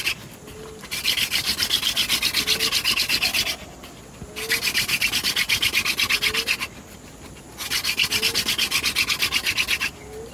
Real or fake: real